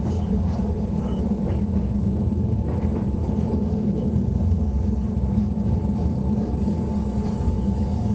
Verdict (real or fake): fake